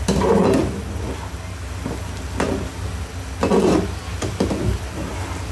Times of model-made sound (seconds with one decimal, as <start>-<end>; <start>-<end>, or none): none